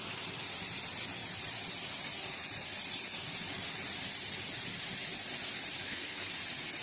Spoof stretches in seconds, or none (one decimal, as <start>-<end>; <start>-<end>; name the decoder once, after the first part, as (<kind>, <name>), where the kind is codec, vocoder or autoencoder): 5.8-6.3 (codec, SNAC)